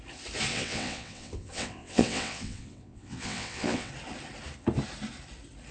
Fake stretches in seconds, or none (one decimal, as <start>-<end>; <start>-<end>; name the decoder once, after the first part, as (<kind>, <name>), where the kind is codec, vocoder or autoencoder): 0.5-3.9 (vocoder, WaveNeXt)